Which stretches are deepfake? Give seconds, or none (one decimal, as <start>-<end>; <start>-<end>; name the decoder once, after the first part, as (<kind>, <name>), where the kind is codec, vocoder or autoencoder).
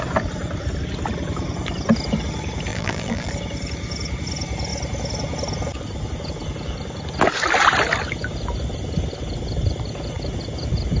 2.7-3.3 (vocoder, BigVGAN v2)